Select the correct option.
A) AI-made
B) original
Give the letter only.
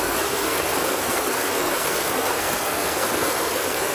A